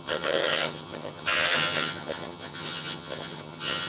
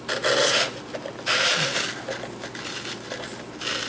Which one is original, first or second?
second